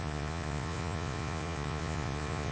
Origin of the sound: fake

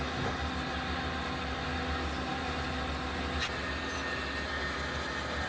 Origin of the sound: real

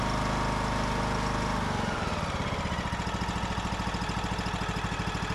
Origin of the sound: real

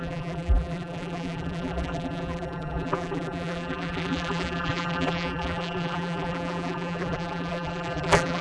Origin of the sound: fake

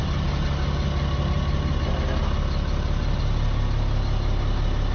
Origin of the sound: real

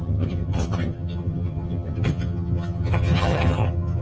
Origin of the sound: fake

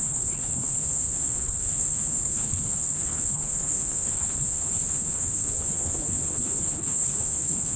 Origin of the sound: fake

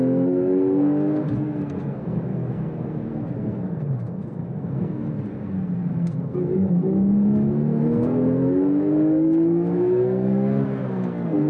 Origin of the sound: fake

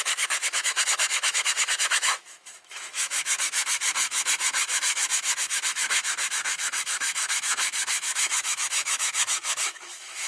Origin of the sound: fake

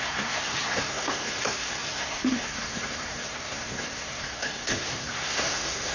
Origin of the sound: fake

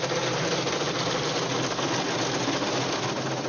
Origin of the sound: real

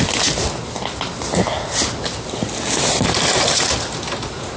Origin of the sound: real